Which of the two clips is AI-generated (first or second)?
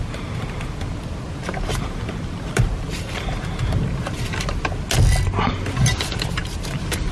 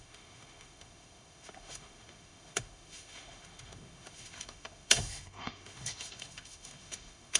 second